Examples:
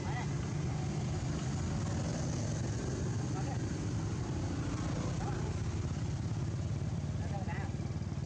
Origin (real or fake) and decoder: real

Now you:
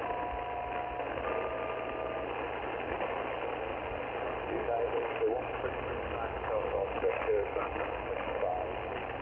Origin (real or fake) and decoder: real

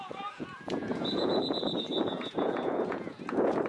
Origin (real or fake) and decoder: fake, vocoder, Vocos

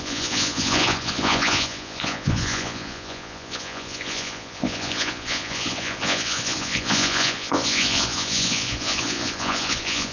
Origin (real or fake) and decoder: fake, vocoder, Vocos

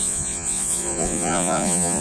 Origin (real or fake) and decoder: fake, vocoder, Vocos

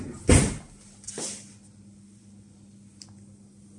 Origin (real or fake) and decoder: real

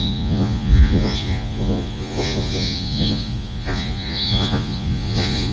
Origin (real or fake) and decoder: fake, vocoder, Vocos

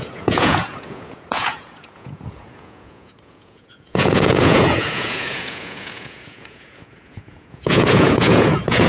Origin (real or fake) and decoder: fake, vocoder, Vocos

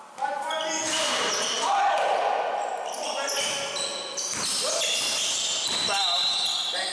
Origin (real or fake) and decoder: real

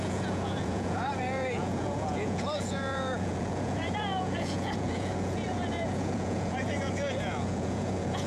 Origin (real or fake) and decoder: fake, vocoder, Vocos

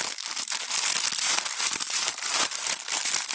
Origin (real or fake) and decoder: real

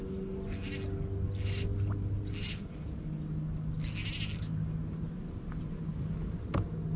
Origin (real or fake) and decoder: real